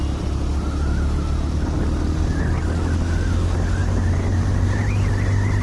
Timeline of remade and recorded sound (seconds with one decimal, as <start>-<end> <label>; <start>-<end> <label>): 0.0-3.8 recorded; 3.8-5.1 remade; 5.1-5.6 recorded